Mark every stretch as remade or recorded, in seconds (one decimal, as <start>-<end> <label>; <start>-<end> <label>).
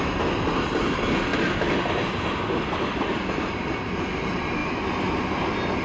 0.0-5.8 recorded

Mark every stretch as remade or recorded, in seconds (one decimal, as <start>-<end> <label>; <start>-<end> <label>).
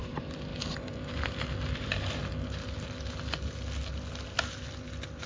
0.0-5.3 recorded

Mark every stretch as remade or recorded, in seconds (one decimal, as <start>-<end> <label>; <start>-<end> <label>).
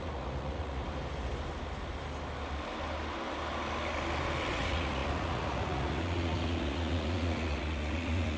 0.0-0.8 remade; 0.8-4.5 recorded; 4.5-8.4 remade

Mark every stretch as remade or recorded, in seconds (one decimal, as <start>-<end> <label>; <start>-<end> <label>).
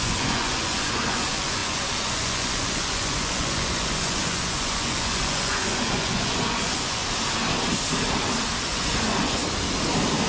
0.0-7.0 remade; 7.0-8.6 recorded; 8.6-9.4 remade; 9.4-10.3 recorded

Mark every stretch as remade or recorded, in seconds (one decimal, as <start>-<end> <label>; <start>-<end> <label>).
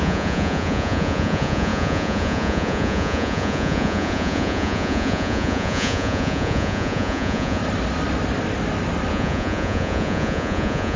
0.0-7.6 remade; 7.6-9.1 recorded; 9.1-11.0 remade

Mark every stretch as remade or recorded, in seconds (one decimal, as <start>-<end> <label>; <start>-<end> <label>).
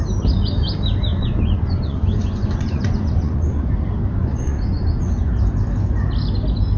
0.0-1.1 recorded; 1.1-3.7 remade; 3.7-4.2 recorded; 4.2-5.3 remade; 5.3-6.8 recorded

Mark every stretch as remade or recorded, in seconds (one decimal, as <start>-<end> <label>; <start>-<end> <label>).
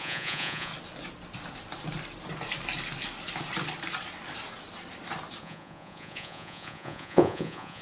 0.0-0.7 remade; 0.7-5.4 recorded; 5.4-7.8 remade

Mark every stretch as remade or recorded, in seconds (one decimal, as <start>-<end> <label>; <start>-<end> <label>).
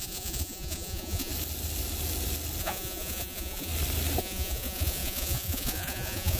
0.0-1.3 remade; 1.3-2.6 recorded; 2.6-3.7 remade; 3.7-4.2 recorded; 4.2-6.4 remade